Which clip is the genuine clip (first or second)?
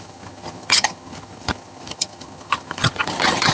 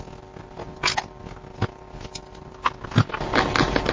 second